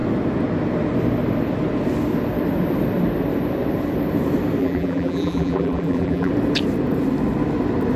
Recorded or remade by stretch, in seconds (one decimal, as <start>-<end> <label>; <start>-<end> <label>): 0.0-4.6 recorded; 4.6-6.3 remade; 6.3-8.0 recorded